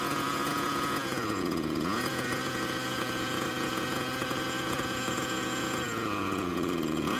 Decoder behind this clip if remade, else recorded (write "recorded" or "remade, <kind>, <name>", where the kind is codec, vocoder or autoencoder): remade, vocoder, Vocos